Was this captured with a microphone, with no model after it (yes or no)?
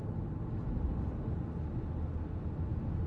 yes